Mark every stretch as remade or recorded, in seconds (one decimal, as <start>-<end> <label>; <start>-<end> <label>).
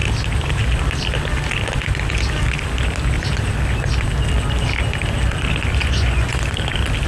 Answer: 0.0-5.8 recorded; 5.8-6.4 remade; 6.4-7.1 recorded